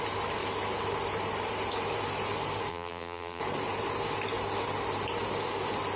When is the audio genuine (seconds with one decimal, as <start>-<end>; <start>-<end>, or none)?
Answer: 0.0-2.7; 3.4-6.0